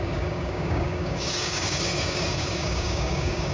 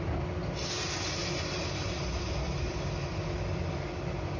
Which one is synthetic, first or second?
first